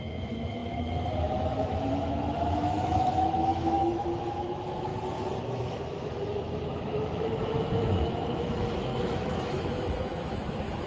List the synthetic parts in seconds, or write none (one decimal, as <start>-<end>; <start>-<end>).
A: 0.0-4.9; 5.4-10.9